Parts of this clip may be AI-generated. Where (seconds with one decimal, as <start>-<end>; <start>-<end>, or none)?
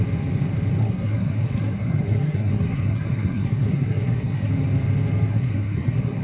0.8-4.5; 5.3-6.2